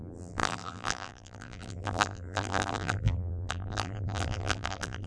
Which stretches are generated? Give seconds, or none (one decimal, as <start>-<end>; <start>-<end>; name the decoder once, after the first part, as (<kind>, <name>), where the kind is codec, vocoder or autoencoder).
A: 0.0-5.1 (vocoder, BigVGAN v2)